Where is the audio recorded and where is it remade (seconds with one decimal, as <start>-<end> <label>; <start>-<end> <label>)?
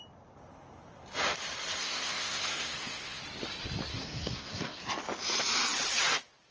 0.0-1.8 recorded; 1.8-3.2 remade; 3.2-3.9 recorded; 3.9-4.8 remade; 4.8-6.5 recorded